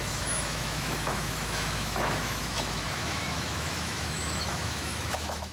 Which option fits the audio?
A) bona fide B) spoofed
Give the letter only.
B